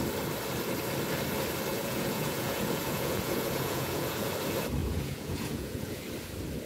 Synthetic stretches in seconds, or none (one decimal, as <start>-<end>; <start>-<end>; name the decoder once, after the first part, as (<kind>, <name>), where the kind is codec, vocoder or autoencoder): 1.7-4.3 (vocoder, Vocos); 4.8-6.0